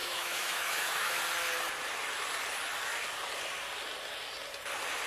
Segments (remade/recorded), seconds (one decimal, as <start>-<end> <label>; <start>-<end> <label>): 0.0-1.2 remade; 1.2-5.1 recorded

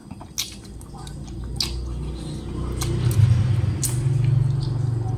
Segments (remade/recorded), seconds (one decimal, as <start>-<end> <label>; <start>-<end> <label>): 0.0-5.2 recorded

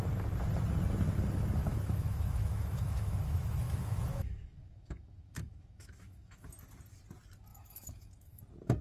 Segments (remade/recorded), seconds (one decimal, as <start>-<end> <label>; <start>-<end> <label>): 0.0-1.6 recorded; 1.6-6.5 remade; 6.5-7.5 recorded; 7.5-8.4 remade; 8.4-8.8 recorded

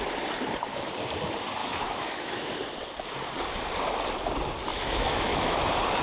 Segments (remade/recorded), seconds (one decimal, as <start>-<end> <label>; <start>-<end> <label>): 0.0-1.6 recorded; 1.6-2.5 remade; 2.5-4.7 recorded; 4.7-5.6 remade; 5.6-6.0 recorded

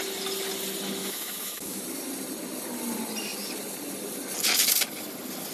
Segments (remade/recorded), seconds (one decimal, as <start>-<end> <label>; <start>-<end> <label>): 0.0-1.0 recorded; 1.0-1.8 remade; 1.8-5.5 recorded

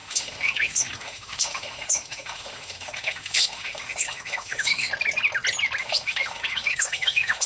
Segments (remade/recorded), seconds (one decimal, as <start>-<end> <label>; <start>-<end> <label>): 0.0-4.9 remade; 4.9-5.8 recorded; 5.8-7.5 remade

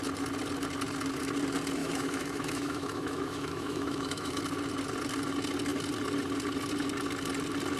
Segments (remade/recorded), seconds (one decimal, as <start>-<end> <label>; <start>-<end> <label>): 0.0-1.8 recorded; 1.8-4.4 remade; 4.4-7.8 recorded

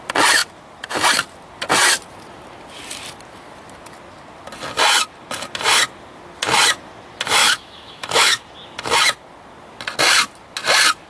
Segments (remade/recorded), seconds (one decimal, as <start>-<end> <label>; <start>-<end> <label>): 0.0-7.4 recorded; 7.4-8.4 remade; 8.4-11.1 recorded